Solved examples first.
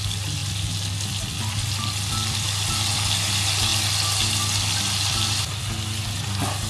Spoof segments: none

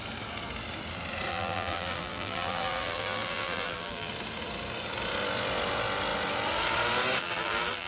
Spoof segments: 1.3-4.1 (vocoder, BigVGAN v2); 7.2-7.9

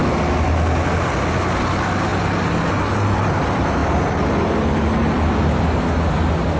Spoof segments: none